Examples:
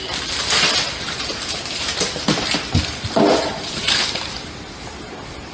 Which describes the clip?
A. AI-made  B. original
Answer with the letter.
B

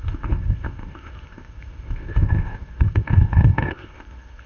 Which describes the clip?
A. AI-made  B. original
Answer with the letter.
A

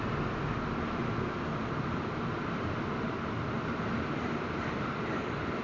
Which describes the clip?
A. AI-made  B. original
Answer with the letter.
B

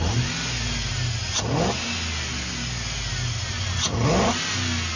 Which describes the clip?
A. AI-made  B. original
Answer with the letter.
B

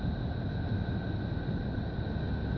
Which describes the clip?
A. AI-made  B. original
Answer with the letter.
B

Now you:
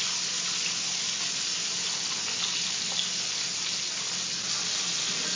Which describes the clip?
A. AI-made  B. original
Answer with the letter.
B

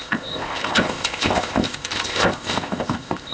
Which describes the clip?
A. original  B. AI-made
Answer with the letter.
B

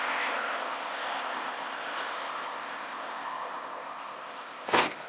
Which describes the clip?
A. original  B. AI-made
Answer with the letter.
B